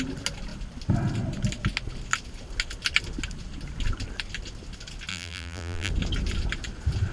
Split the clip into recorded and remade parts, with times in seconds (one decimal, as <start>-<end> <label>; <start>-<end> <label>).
0.0-5.1 recorded; 5.1-5.9 remade; 5.9-7.1 recorded